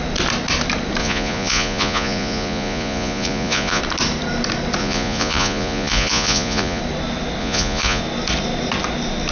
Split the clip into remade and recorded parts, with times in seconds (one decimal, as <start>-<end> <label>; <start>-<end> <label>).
0.0-1.0 recorded; 1.0-3.8 remade; 3.8-4.8 recorded; 4.8-6.8 remade; 6.8-7.4 recorded; 7.4-8.0 remade; 8.0-9.3 recorded